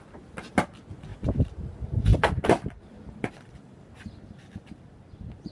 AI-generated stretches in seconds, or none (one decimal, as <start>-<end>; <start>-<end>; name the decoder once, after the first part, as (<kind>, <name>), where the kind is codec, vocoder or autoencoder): 2.1-5.5 (vocoder, BigVGAN v2)